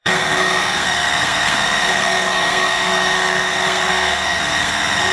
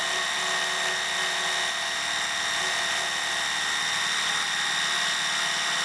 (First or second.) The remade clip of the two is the first